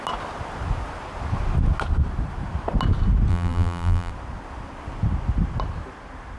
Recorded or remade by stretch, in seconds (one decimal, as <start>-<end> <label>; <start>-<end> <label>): 0.0-3.3 recorded; 3.3-4.1 remade; 4.1-6.4 recorded

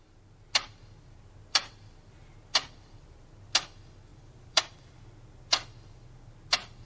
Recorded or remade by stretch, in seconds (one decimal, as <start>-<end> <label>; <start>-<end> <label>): 0.0-4.1 recorded; 4.1-4.6 remade; 4.6-6.9 recorded

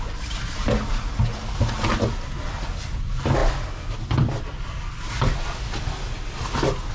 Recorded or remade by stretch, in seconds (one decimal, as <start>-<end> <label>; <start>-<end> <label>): 0.0-6.9 recorded

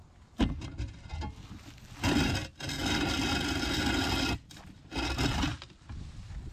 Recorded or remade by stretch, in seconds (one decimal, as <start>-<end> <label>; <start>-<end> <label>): 0.0-6.5 recorded

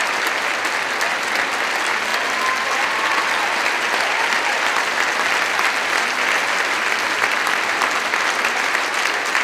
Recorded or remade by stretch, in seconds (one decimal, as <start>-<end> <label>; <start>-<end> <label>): 0.0-9.4 recorded

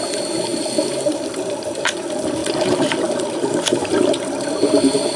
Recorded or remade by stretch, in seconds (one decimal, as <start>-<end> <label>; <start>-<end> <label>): 0.0-0.5 recorded; 0.5-1.9 remade; 1.9-2.4 recorded; 2.4-3.2 remade; 3.2-3.8 recorded; 3.8-4.4 remade; 4.4-5.2 recorded

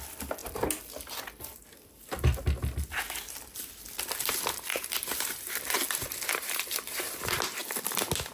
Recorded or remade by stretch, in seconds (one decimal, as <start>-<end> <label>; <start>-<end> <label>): 0.0-4.7 recorded; 4.7-5.8 remade; 5.8-6.3 recorded; 6.3-7.0 remade; 7.0-8.3 recorded

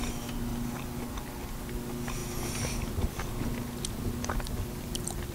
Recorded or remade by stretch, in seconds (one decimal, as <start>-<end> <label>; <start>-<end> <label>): 0.0-5.3 recorded